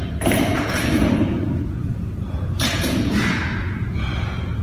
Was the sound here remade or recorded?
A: remade